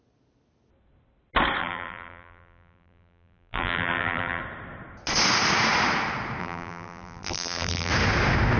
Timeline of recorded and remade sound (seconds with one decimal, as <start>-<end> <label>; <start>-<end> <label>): 0.0-1.6 recorded; 1.6-4.4 remade; 4.4-6.4 recorded; 6.4-7.9 remade; 7.9-8.6 recorded